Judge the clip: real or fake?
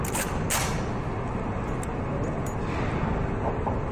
real